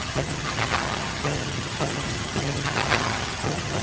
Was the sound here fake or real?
fake